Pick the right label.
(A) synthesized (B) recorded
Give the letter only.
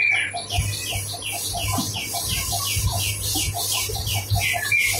B